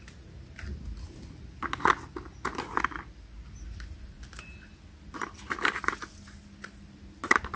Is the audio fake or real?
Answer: real